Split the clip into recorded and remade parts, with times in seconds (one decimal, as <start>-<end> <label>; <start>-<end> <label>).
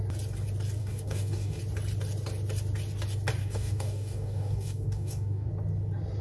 0.0-0.8 recorded; 0.8-1.6 remade; 1.6-3.4 recorded; 3.4-5.5 remade; 5.5-6.2 recorded